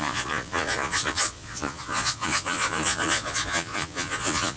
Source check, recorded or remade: remade